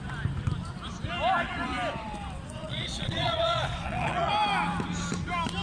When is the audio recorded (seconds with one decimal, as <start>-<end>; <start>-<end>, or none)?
0.0-2.6; 4.3-5.6